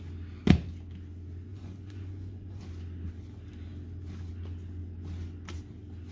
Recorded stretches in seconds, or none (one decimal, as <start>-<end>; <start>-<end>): 0.0-1.5; 2.6-6.1